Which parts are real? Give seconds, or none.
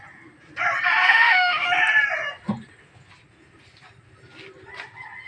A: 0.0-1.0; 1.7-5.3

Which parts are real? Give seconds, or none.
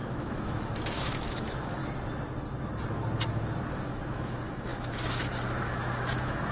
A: 1.8-3.8